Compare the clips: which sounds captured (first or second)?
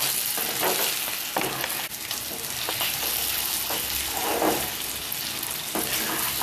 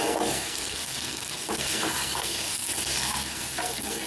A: first